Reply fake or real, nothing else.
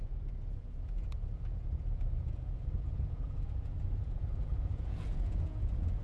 fake